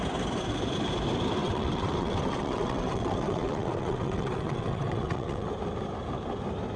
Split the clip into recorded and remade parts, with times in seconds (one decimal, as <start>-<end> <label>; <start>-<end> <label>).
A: 0.0-1.4 recorded; 1.4-5.5 remade; 5.5-6.8 recorded

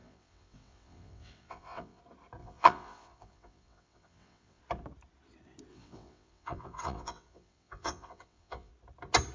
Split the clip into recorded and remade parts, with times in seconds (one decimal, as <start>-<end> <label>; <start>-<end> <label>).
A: 0.0-2.0 remade; 2.0-2.4 recorded; 2.4-4.6 remade; 4.6-5.7 recorded; 5.7-8.7 remade; 8.7-9.3 recorded

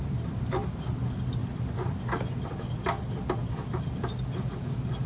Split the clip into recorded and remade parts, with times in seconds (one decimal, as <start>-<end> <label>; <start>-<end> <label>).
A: 0.0-5.1 recorded

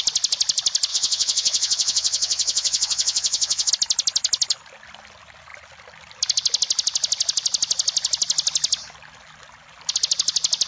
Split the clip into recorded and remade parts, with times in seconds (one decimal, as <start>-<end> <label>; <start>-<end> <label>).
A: 0.0-0.9 recorded; 0.9-3.7 remade; 3.7-10.7 recorded

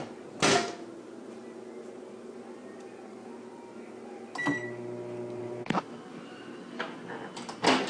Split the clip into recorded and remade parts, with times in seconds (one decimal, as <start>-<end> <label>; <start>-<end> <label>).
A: 0.0-7.9 recorded